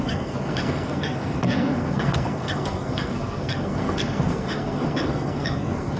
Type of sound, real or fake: fake